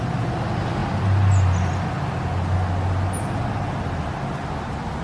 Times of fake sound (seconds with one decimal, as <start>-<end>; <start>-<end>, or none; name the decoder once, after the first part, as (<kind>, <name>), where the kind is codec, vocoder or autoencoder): none